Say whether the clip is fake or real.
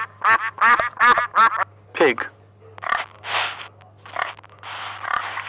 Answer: real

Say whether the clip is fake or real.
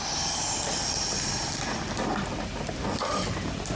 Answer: real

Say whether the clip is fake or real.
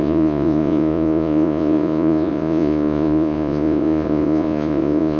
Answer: fake